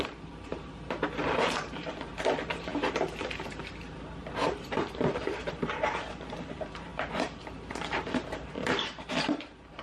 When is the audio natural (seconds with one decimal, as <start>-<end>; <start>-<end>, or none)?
none